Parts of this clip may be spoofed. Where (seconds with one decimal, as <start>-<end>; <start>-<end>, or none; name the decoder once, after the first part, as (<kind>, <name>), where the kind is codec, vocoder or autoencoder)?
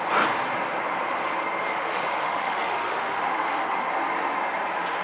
1.7-3.9 (autoencoder, DAC-VAE)